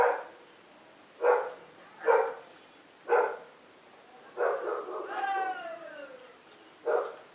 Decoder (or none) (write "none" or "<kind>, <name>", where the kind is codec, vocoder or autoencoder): none